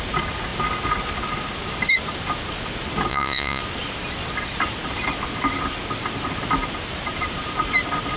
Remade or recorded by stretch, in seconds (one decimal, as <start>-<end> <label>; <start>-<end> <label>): 0.0-3.1 recorded; 3.1-3.6 remade; 3.6-8.2 recorded